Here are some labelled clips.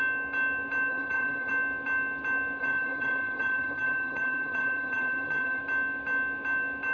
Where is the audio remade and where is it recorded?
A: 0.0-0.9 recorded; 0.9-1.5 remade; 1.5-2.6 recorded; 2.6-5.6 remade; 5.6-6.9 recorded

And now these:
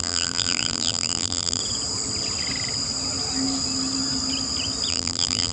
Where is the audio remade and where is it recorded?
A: 0.0-1.6 remade; 1.6-4.9 recorded; 4.9-5.5 remade

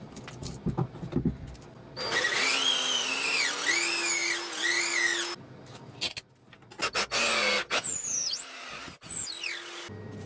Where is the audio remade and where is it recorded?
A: 0.0-7.9 recorded; 7.9-8.7 remade; 8.7-10.3 recorded

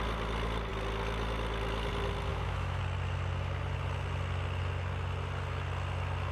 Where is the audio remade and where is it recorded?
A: 0.0-2.3 recorded; 2.3-2.8 remade; 2.8-6.3 recorded

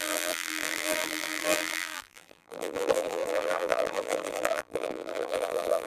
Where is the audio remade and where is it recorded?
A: 0.0-5.9 remade